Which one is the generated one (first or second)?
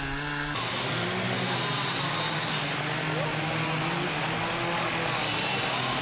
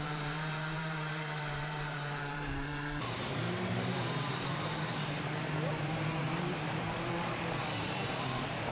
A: second